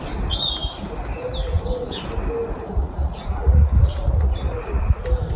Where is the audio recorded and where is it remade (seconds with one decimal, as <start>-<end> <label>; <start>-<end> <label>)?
0.0-2.8 recorded; 2.8-4.8 remade; 4.8-5.4 recorded